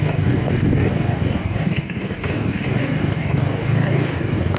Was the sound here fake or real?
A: fake